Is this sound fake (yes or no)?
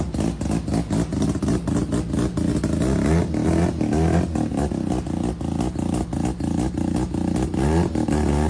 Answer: no